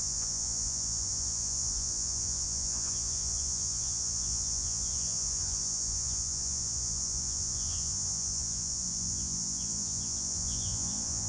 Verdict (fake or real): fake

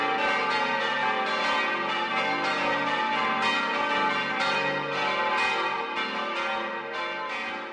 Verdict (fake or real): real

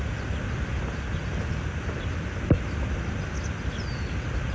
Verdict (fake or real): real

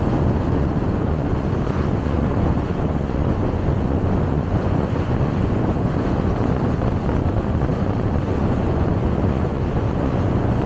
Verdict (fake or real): fake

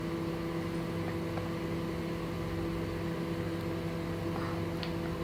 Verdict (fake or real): real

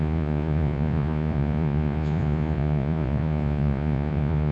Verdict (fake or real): fake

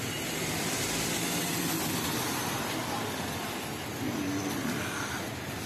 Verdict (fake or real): real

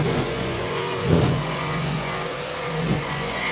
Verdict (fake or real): fake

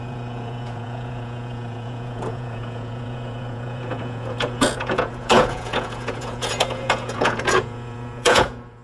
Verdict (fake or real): fake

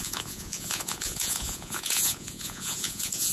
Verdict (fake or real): fake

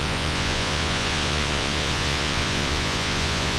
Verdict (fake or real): fake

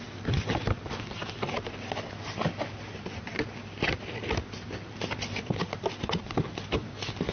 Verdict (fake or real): real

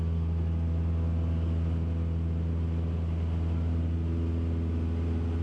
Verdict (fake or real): real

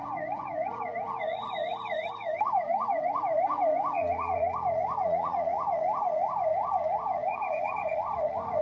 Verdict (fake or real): fake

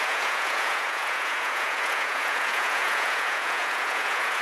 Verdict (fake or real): fake